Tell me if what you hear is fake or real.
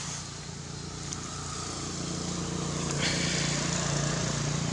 real